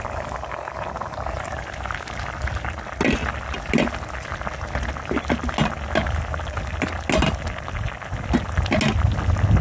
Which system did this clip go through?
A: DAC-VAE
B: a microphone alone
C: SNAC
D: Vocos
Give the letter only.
B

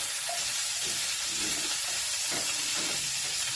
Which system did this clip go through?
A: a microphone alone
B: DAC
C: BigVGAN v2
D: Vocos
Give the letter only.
A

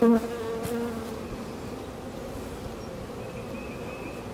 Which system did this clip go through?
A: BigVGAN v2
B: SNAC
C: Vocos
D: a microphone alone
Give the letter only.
D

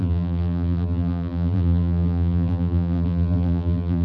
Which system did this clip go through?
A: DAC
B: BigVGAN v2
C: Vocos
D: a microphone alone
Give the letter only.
B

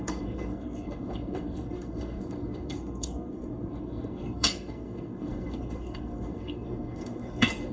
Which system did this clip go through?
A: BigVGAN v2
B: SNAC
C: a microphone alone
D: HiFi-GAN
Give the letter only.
B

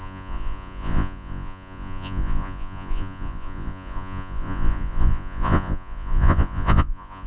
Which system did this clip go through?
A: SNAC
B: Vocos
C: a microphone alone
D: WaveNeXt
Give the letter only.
B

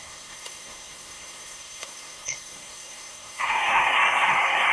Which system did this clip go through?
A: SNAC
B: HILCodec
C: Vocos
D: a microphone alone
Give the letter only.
A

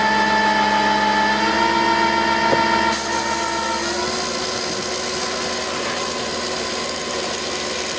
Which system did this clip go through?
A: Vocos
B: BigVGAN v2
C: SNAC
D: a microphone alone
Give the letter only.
D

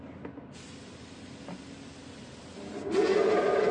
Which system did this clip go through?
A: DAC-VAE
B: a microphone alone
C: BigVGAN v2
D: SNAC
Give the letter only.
B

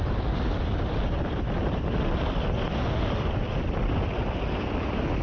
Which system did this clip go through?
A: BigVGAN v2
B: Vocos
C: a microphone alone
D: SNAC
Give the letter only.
A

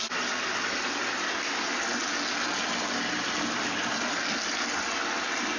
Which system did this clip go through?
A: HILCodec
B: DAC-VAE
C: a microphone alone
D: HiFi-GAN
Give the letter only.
C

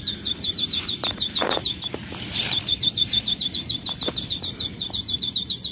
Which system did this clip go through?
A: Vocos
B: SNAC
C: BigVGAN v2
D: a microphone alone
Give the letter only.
C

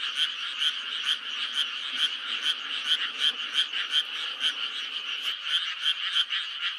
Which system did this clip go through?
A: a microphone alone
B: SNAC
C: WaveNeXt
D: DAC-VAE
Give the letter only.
A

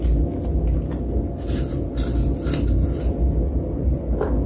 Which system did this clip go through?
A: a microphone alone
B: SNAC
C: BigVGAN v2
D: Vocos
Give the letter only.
A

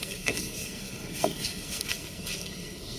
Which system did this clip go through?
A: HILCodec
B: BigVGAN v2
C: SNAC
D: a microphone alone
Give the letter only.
C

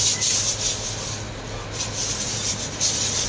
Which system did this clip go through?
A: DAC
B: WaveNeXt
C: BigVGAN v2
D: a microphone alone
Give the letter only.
D